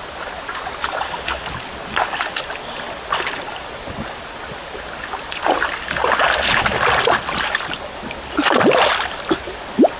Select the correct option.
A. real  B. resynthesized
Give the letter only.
A